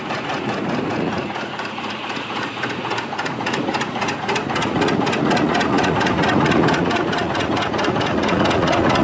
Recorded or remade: remade